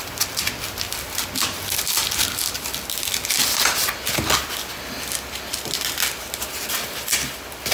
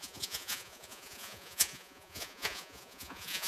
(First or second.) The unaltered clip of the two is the first